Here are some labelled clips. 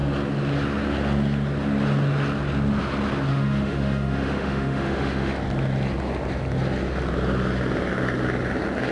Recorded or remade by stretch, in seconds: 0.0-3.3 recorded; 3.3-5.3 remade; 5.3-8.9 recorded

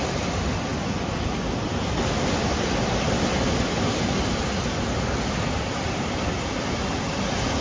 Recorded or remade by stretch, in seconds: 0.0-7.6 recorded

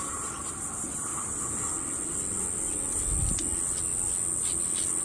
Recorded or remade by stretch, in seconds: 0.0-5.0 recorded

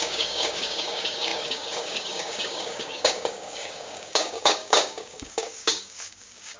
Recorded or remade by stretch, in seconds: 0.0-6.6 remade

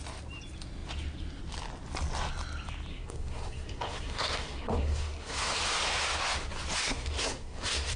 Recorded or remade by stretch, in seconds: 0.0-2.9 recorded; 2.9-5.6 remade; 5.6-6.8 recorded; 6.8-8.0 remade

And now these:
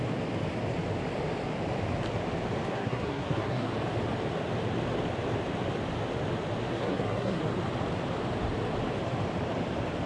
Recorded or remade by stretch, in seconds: 0.0-2.7 recorded; 2.7-3.7 remade; 3.7-6.6 recorded; 6.6-7.4 remade; 7.4-10.1 recorded